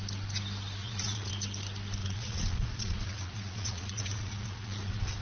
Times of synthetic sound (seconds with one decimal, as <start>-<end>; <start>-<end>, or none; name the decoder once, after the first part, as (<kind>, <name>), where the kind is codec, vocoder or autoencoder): 0.8-1.3 (vocoder, Vocos); 2.0-5.2